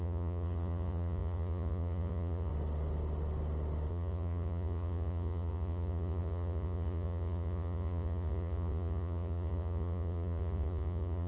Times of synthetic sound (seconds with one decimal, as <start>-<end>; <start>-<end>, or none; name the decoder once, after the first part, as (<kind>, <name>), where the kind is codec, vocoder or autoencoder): 0.0-2.5 (vocoder, Vocos); 3.9-11.3